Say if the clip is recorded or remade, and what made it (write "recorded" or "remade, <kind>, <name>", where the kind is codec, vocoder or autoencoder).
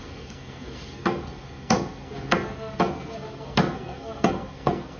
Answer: remade, codec, SNAC